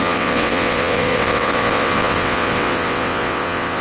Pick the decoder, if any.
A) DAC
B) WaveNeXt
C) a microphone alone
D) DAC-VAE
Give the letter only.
B